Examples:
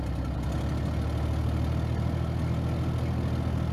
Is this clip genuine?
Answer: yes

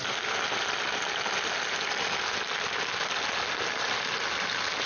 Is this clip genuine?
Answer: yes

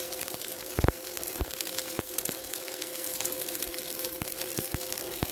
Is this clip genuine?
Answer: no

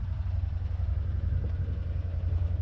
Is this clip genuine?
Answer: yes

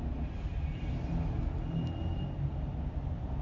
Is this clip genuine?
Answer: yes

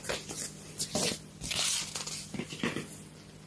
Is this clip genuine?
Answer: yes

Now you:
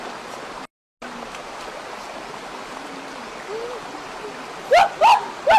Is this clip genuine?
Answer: yes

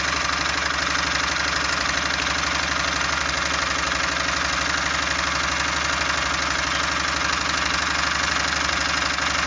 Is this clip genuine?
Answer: yes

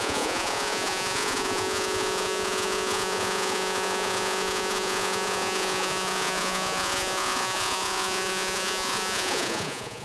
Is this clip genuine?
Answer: no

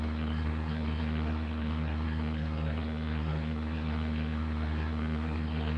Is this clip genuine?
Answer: no